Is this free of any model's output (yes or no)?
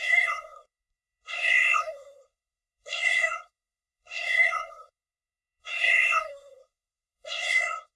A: no